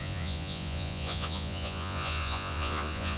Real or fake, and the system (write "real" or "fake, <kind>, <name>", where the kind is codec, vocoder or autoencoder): fake, vocoder, Vocos